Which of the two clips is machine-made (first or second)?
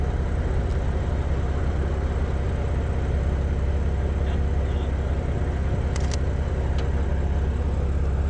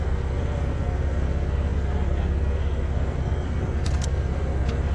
second